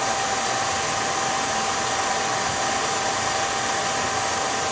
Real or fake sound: real